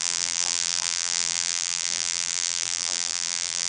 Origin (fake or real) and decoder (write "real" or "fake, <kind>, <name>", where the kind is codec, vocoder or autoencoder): fake, vocoder, BigVGAN v2